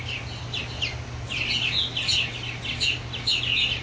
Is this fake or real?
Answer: real